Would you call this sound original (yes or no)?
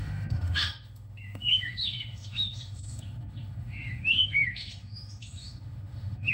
no